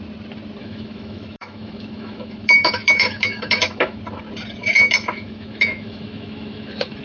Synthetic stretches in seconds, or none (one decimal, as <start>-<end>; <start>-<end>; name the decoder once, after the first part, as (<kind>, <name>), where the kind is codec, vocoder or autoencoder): 0.6-4.0 (autoencoder, DAC-VAE); 4.6-7.0